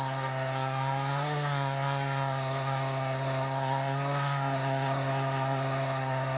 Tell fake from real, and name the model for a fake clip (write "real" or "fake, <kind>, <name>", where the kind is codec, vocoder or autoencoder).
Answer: fake, codec, SNAC